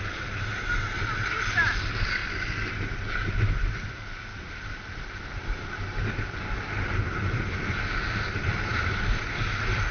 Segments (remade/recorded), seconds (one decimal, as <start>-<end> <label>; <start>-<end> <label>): 0.0-9.9 recorded